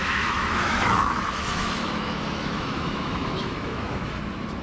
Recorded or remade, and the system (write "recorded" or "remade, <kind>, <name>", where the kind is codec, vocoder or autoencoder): remade, autoencoder, DAC-VAE